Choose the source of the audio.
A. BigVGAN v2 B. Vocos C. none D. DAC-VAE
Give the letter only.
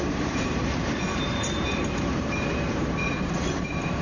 A